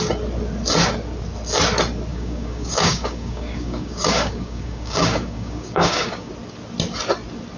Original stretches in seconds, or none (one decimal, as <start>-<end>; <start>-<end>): 0.0-2.1; 6.3-7.6